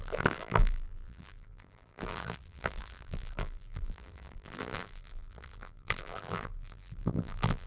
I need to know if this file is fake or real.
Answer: fake